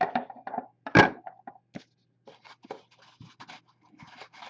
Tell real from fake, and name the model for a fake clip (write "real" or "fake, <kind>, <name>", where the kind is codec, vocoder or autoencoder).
real